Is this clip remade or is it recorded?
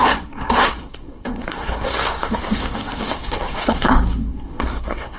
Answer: remade